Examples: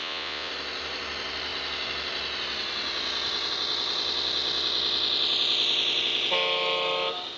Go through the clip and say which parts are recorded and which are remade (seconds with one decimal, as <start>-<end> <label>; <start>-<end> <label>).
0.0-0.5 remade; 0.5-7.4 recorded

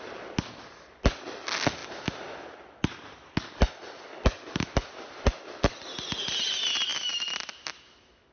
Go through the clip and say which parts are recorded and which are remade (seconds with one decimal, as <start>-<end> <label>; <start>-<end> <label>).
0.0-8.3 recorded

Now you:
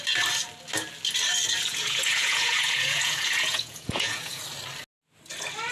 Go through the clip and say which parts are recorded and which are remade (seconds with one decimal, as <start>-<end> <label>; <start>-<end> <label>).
0.0-1.7 recorded; 1.7-4.4 remade; 4.4-5.7 recorded

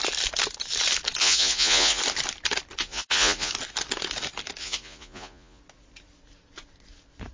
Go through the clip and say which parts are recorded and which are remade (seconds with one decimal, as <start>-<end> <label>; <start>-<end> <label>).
0.0-1.2 recorded; 1.2-2.0 remade; 2.0-2.8 recorded; 2.8-3.5 remade; 3.5-4.6 recorded; 4.6-5.6 remade; 5.6-7.3 recorded